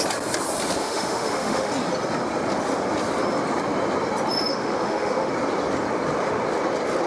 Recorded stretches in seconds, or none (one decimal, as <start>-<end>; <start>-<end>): 0.0-0.8; 1.7-4.5; 5.3-7.1